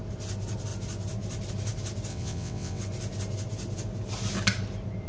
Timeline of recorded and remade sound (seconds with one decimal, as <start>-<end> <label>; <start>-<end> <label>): 0.0-2.1 recorded; 2.1-2.8 remade; 2.8-5.1 recorded